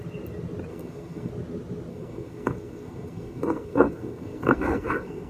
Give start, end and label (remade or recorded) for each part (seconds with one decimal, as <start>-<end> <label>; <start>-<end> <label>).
0.0-0.7 recorded; 0.7-1.3 remade; 1.3-1.9 recorded; 1.9-5.3 remade

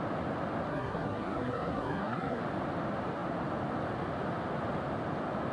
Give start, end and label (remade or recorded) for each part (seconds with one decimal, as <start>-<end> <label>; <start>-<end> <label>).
0.0-0.7 recorded; 0.7-2.4 remade; 2.4-5.5 recorded